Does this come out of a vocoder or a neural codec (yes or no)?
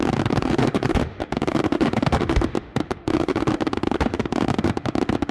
yes